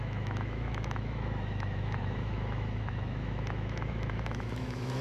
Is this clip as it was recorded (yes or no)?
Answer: no